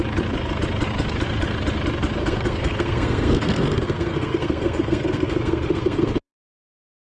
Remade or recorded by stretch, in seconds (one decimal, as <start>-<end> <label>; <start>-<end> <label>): 0.0-2.2 recorded; 2.2-6.5 remade; 6.5-7.1 recorded